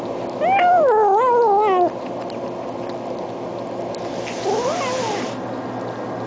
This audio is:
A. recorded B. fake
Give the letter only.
A